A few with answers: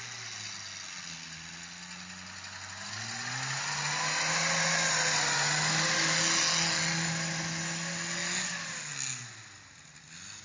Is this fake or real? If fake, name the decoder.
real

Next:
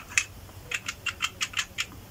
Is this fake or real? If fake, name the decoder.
fake, vocoder, BigVGAN v2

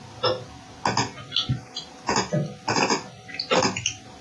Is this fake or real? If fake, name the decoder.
real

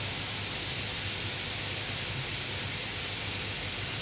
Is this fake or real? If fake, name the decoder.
real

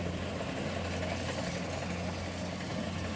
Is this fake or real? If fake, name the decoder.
real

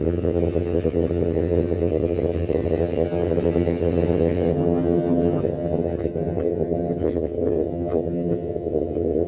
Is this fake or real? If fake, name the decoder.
fake, vocoder, HiFi-GAN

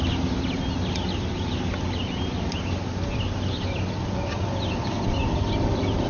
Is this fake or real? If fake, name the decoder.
real